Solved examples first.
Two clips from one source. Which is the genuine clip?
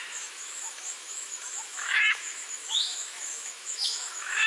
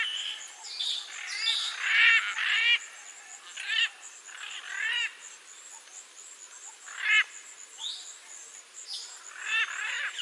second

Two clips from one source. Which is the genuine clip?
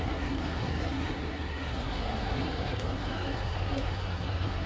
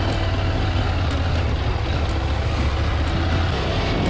second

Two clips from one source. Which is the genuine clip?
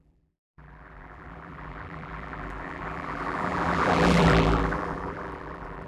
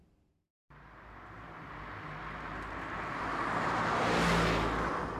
second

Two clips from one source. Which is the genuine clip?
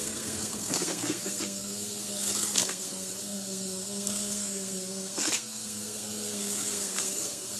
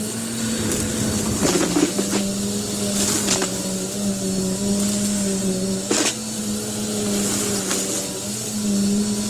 second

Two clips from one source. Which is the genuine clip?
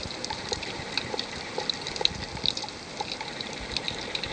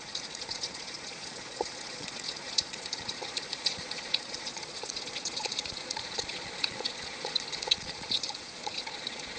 first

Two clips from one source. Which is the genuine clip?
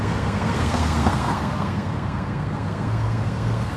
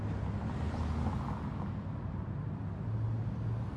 second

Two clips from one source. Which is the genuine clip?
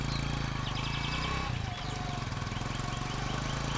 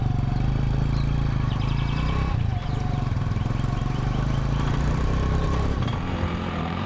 first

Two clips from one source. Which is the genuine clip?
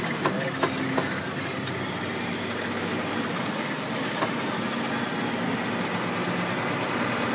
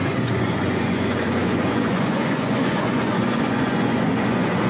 first